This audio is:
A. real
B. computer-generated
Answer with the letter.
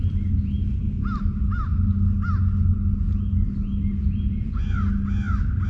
A